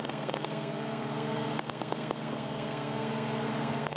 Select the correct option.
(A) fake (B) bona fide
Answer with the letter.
A